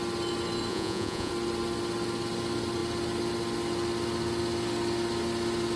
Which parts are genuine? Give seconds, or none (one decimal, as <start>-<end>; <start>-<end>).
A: 0.0-0.7; 1.3-5.8